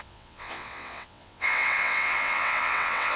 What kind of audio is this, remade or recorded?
remade